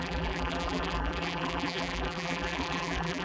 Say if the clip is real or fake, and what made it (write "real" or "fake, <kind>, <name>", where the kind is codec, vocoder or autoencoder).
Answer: fake, vocoder, BigVGAN v2